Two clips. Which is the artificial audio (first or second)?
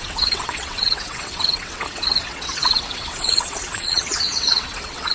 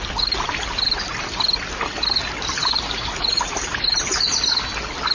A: first